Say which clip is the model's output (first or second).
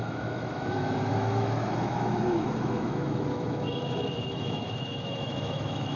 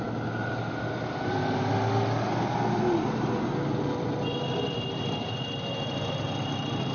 first